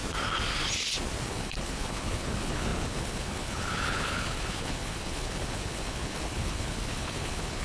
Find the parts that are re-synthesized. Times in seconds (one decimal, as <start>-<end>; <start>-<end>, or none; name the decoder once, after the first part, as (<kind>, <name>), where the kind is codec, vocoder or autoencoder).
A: 1.3-7.6 (codec, HILCodec)